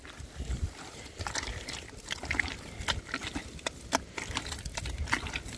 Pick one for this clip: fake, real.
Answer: real